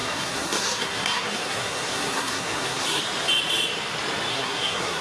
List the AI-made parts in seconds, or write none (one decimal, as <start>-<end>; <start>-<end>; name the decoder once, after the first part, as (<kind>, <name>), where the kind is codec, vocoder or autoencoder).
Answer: 0.0-3.0 (codec, SNAC); 4.3-5.0